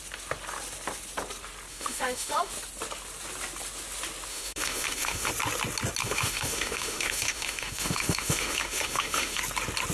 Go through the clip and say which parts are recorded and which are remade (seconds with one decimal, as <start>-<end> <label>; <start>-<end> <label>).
0.0-1.7 recorded; 1.7-2.5 remade; 2.5-4.3 recorded; 4.3-5.3 remade; 5.3-6.0 recorded; 6.0-9.4 remade; 9.4-9.9 recorded